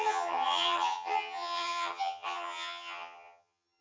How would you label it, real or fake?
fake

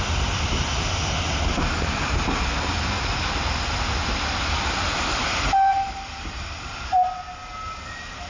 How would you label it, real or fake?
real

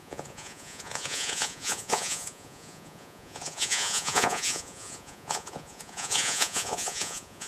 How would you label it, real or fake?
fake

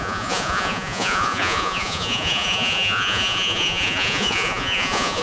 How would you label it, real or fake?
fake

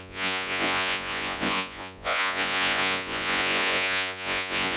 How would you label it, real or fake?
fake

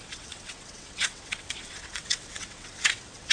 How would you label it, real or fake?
fake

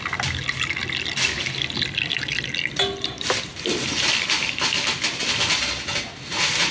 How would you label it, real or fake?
real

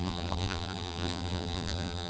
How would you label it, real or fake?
fake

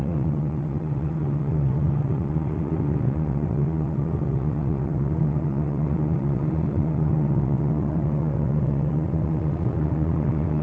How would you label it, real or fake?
fake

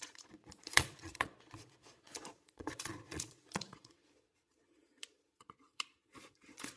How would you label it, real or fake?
fake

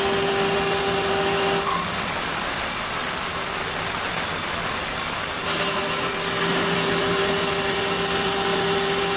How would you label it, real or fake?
real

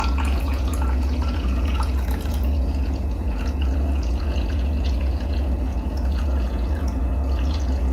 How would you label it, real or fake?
fake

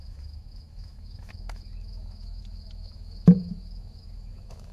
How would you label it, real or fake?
fake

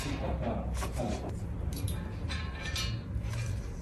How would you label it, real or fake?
fake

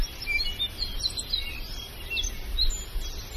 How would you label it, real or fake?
real